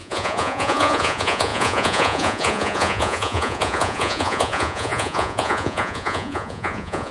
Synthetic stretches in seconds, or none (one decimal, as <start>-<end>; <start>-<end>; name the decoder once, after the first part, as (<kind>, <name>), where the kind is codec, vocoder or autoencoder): 0.0-7.1 (vocoder, Vocos)